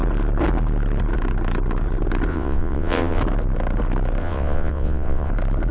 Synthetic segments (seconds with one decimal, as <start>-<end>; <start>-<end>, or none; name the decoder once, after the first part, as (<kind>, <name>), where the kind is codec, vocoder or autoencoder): 2.3-3.2 (vocoder, WaveNeXt); 4.2-5.3